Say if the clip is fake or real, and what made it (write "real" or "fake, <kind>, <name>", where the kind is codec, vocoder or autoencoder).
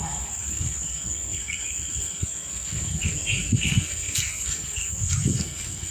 fake, codec, SNAC